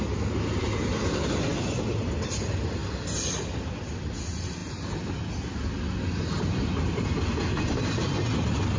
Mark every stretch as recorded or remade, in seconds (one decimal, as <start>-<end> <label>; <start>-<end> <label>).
0.0-8.8 recorded